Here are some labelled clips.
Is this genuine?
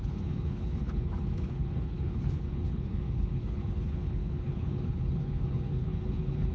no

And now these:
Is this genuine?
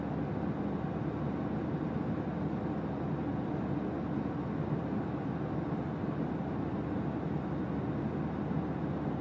yes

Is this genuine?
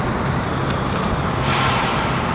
yes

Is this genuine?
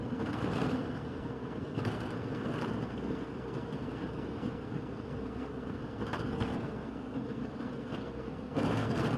no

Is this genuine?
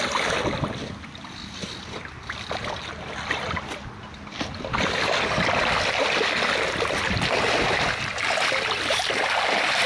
yes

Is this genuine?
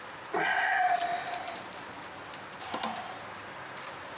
yes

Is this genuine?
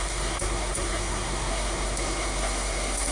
no